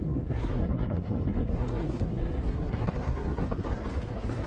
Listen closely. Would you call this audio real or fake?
fake